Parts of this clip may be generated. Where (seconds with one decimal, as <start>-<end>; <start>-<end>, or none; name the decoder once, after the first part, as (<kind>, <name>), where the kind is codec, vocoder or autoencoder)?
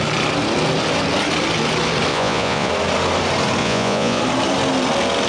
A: 2.1-2.7 (vocoder, Vocos); 3.6-4.2